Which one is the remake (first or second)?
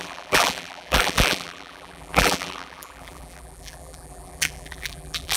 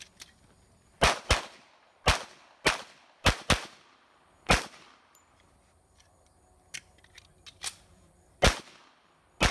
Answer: first